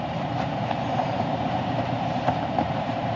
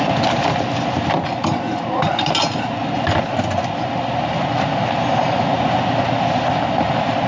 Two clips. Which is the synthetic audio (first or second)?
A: first